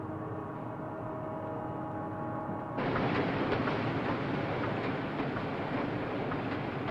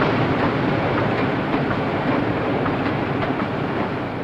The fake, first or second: second